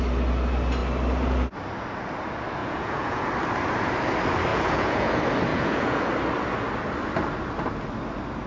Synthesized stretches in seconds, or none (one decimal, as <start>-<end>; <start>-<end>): 2.6-3.3; 4.5-5.1; 5.5-6.1